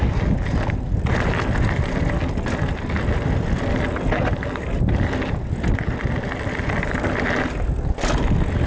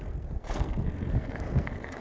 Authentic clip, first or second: first